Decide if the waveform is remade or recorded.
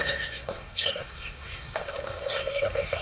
remade